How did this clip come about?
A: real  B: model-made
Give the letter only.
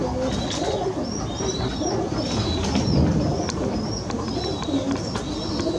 A